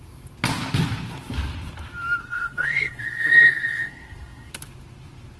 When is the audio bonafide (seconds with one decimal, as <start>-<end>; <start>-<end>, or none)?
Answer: 0.0-2.2; 4.5-5.4